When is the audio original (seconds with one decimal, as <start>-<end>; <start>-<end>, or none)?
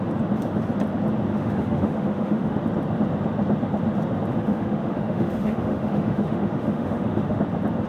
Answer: 0.0-1.3; 2.6-4.3; 7.4-7.9